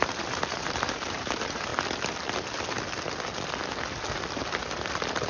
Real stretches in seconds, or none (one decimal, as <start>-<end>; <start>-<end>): 1.7-5.3